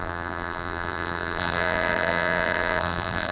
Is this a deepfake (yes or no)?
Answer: yes